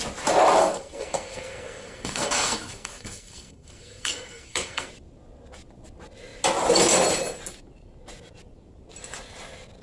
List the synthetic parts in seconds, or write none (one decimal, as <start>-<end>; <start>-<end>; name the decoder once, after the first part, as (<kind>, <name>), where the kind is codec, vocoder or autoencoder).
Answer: 0.6-4.9 (codec, SNAC)